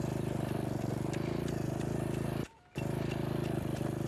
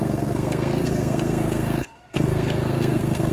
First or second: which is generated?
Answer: second